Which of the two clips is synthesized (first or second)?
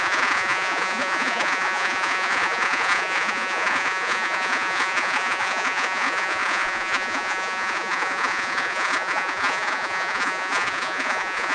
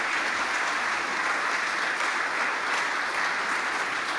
first